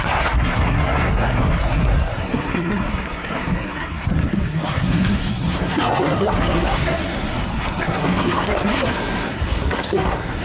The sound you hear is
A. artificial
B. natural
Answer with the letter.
A